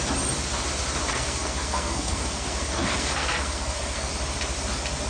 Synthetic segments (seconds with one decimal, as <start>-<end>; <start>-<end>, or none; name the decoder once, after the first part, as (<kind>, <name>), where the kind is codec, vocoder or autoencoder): 1.1-4.1 (codec, SNAC)